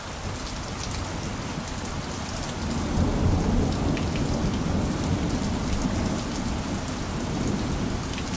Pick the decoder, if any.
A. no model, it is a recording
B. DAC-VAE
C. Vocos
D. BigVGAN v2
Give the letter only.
A